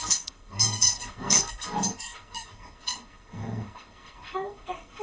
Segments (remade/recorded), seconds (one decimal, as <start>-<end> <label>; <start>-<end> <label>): 0.0-5.0 remade